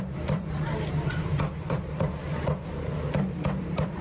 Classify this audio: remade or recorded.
remade